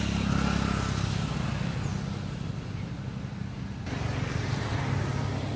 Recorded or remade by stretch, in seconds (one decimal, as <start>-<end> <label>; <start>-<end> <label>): 0.0-5.6 recorded